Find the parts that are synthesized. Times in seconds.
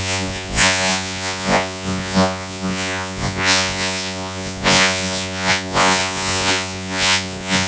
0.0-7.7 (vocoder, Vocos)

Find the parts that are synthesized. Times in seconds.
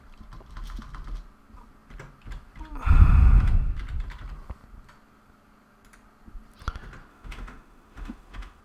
7.1-8.6 (autoencoder, DAC-VAE)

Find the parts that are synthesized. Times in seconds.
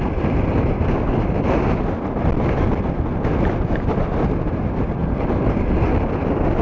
5.0-5.5 (vocoder, BigVGAN v2)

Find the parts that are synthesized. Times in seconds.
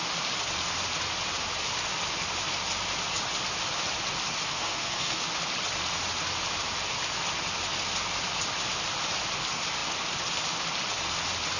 4.5-5.2 (codec, SNAC)